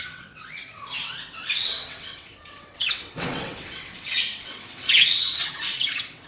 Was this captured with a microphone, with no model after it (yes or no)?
no